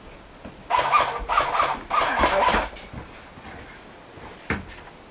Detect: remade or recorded recorded